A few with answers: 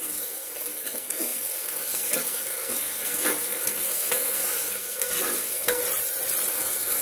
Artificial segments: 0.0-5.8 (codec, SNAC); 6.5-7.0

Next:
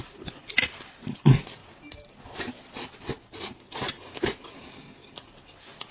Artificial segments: 0.0-1.6 (vocoder, BigVGAN v2); 4.6-5.9